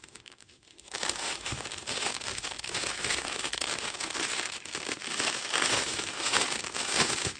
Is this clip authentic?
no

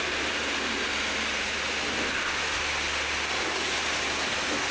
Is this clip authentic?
yes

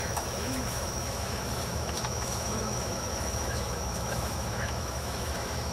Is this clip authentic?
no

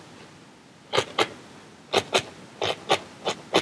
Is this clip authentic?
yes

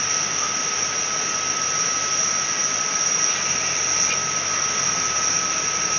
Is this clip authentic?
yes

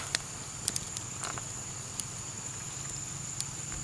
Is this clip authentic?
yes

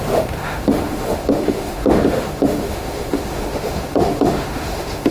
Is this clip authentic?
no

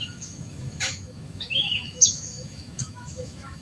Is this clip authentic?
no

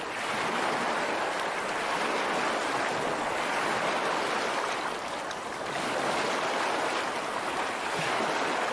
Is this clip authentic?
yes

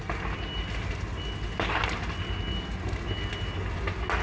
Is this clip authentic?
yes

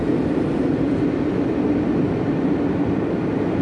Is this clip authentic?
yes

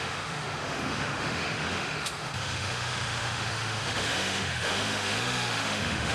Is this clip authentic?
no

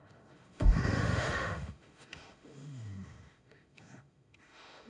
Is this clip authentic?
no